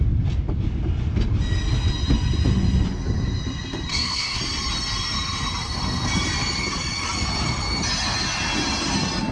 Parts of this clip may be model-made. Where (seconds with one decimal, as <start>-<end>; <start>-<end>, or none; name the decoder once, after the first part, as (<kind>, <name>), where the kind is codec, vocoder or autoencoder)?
3.9-4.4 (codec, SNAC)